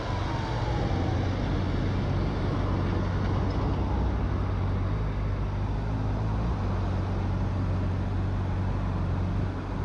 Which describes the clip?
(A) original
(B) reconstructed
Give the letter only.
A